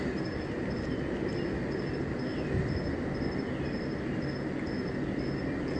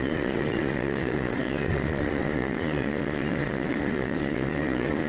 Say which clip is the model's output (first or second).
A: second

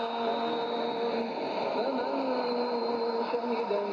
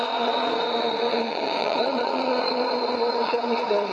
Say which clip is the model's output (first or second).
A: second